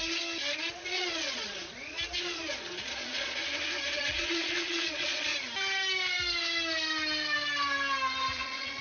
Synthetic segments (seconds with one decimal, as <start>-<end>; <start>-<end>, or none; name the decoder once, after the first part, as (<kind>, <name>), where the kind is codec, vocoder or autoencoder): 0.7-3.4 (vocoder, Vocos); 3.9-5.3; 8.3-8.8